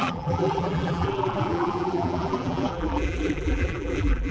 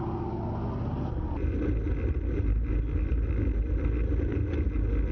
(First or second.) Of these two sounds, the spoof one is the first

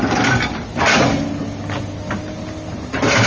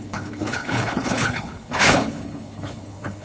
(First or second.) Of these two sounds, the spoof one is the second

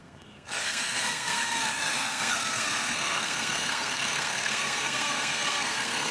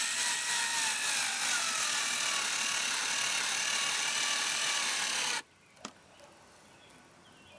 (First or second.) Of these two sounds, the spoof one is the first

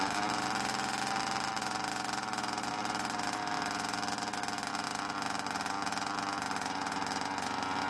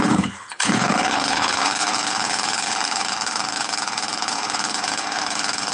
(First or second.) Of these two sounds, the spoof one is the second